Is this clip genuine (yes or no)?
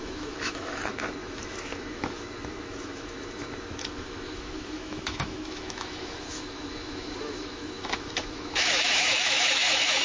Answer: no